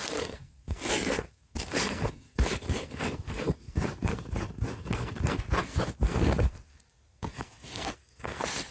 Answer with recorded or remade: remade